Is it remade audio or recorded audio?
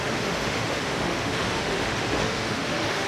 remade